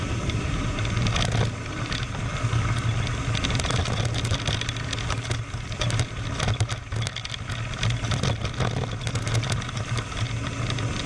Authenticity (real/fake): real